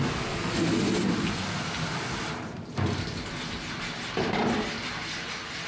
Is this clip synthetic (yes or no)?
no